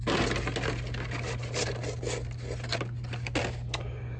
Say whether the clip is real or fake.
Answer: real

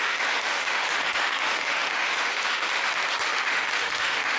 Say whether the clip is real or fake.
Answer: fake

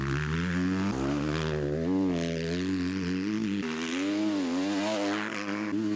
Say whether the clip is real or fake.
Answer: real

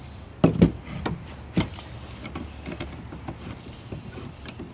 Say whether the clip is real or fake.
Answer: real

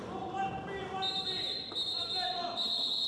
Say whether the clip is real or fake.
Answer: real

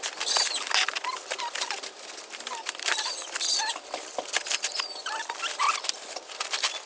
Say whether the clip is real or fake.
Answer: real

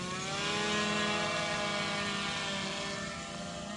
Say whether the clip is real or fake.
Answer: real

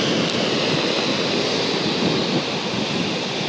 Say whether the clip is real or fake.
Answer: real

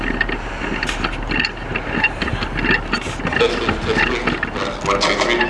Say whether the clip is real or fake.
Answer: real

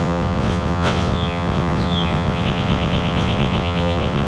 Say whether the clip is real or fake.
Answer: fake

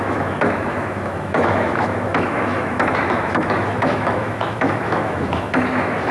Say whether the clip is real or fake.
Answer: fake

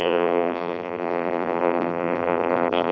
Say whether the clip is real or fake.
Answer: fake